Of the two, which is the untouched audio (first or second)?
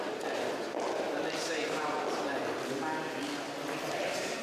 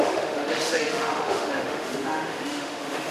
first